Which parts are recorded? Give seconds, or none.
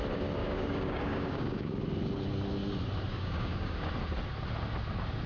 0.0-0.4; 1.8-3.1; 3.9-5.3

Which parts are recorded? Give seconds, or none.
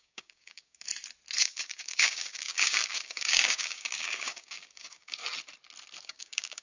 0.9-1.4; 5.2-6.0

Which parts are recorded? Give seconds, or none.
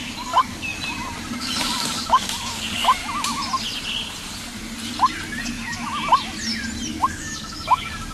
0.7-1.4; 3.0-6.9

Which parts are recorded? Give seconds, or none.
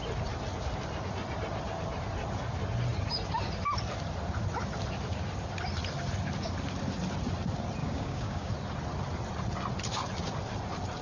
0.0-7.8; 8.5-11.0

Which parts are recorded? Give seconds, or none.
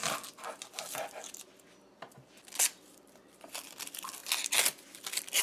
0.0-5.4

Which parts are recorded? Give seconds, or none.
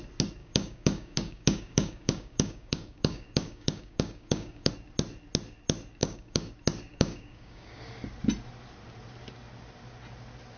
0.0-0.4; 4.7-6.0; 6.5-6.9; 7.8-10.6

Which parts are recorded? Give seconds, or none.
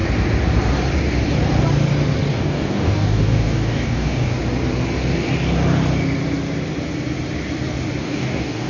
0.0-2.3; 4.4-8.0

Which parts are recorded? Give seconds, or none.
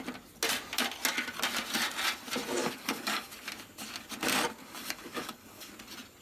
0.0-2.6; 3.3-4.6; 5.7-6.2